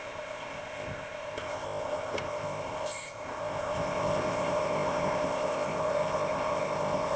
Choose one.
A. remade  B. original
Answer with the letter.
A